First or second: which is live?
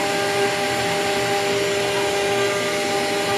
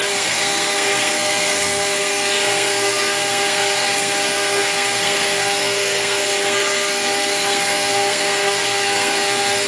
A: first